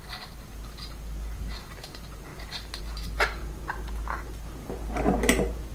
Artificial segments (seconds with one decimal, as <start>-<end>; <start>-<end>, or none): none